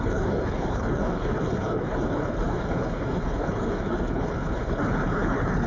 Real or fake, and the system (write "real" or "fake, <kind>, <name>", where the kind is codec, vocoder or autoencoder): fake, codec, HILCodec